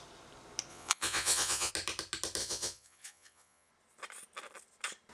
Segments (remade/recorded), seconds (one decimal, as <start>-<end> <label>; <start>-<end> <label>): 0.0-0.7 recorded; 0.7-1.7 remade; 1.7-2.4 recorded; 2.4-3.7 remade; 3.7-5.1 recorded